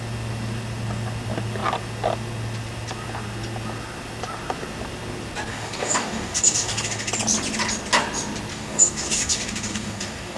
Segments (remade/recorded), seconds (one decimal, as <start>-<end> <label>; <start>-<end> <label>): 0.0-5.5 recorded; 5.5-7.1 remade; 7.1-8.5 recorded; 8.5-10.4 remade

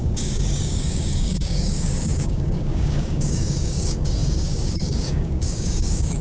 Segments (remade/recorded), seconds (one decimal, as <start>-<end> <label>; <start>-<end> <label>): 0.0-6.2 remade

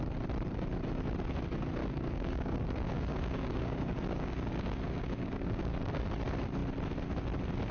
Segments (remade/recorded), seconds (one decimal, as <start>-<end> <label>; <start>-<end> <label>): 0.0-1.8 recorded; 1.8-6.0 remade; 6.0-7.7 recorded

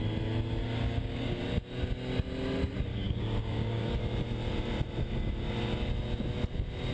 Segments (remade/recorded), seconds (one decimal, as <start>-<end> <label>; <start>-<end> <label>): 0.0-0.6 recorded; 0.6-1.4 remade; 1.4-2.9 recorded; 2.9-4.0 remade; 4.0-6.9 recorded

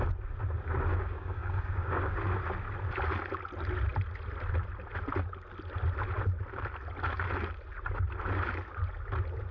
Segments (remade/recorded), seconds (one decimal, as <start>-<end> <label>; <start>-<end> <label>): 0.0-0.9 recorded; 0.9-2.2 remade; 2.2-9.5 recorded